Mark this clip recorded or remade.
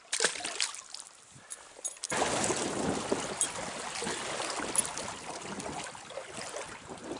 recorded